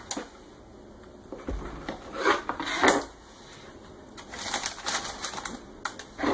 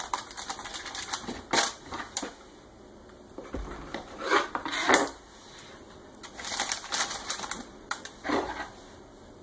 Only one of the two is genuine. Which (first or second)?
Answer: first